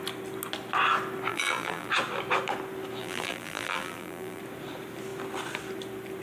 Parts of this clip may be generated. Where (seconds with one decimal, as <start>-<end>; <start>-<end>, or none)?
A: 1.3-1.9; 3.0-4.4